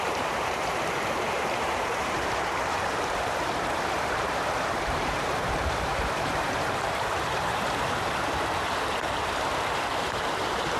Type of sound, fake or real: fake